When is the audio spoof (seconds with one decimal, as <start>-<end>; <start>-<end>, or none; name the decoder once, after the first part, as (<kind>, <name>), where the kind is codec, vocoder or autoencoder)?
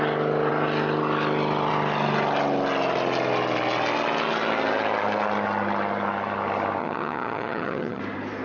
6.8-8.0 (vocoder, HiFi-GAN)